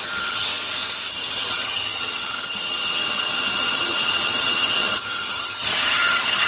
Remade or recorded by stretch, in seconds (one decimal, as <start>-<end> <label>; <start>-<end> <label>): 0.0-0.5 remade; 0.5-1.1 recorded; 1.1-6.5 remade